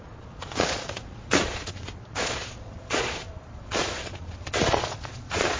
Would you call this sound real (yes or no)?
no